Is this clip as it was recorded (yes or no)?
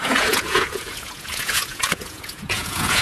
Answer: no